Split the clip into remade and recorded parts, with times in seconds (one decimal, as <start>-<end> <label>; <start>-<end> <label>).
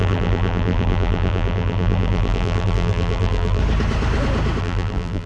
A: 0.0-3.6 remade; 3.6-4.6 recorded; 4.6-5.3 remade